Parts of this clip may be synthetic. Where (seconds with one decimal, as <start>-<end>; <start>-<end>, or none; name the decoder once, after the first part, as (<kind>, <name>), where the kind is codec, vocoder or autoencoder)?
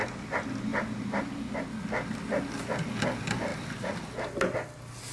none